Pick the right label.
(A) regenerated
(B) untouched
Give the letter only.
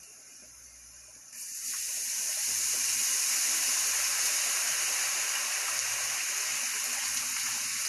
B